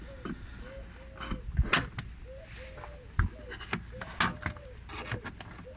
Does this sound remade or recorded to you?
recorded